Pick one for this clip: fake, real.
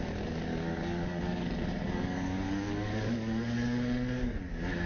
fake